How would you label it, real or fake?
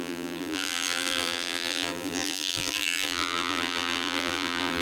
fake